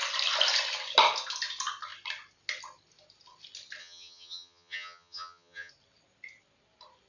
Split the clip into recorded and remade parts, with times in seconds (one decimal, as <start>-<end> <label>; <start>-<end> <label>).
0.0-3.8 recorded; 3.8-5.7 remade; 5.7-7.1 recorded